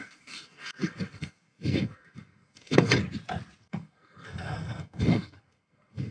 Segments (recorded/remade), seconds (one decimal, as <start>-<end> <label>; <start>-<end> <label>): 0.0-2.9 remade; 2.9-3.6 recorded; 3.6-6.1 remade